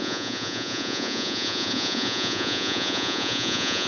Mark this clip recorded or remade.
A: remade